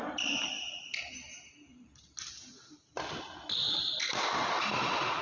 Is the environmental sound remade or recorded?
recorded